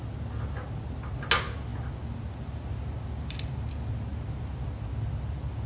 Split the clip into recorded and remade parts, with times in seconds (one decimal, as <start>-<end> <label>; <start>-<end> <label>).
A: 0.0-5.7 recorded